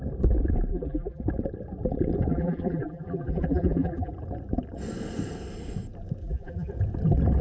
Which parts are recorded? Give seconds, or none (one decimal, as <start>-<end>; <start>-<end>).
0.0-0.7; 1.2-2.3; 4.1-6.2; 6.7-7.4